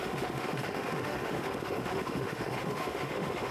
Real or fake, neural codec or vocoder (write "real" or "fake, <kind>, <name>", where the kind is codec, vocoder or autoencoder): fake, autoencoder, DAC-VAE